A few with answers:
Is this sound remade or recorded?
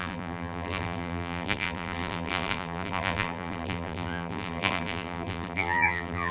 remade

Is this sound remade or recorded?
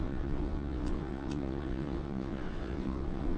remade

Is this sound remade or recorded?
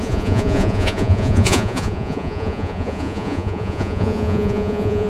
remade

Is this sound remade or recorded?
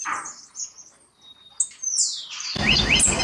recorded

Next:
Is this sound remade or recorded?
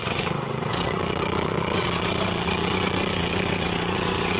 remade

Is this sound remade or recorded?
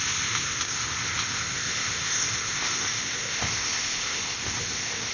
remade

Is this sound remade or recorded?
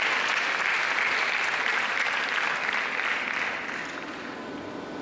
recorded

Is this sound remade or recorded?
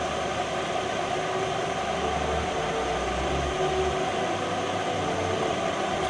recorded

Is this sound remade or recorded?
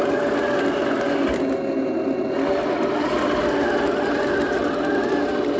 recorded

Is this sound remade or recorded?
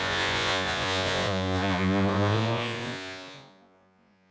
remade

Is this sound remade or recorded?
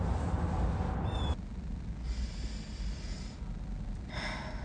recorded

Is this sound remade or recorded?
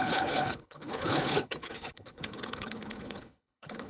remade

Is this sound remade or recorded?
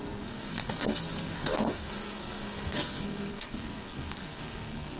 remade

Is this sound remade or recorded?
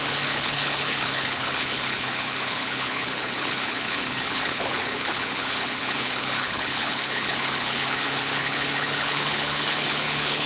remade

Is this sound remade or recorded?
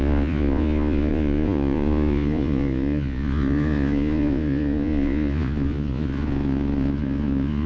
remade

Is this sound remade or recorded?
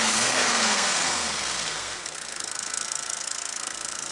remade